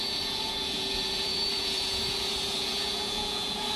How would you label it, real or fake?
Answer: fake